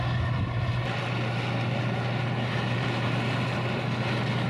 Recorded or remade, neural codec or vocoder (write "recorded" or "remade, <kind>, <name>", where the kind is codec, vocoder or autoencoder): recorded